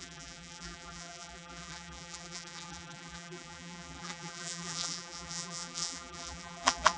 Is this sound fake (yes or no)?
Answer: yes